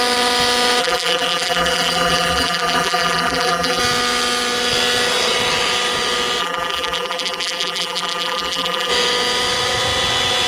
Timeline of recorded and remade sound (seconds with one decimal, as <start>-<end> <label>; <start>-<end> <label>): 0.0-0.8 recorded; 0.8-3.8 remade; 3.8-6.4 recorded; 6.4-8.9 remade; 8.9-10.5 recorded